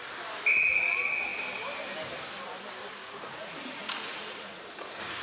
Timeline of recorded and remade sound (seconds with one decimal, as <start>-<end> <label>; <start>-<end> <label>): 0.0-3.0 recorded; 3.0-4.6 remade; 4.6-5.2 recorded